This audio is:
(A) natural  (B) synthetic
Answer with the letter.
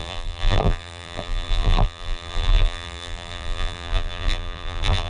B